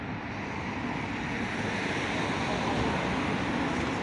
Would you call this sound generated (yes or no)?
no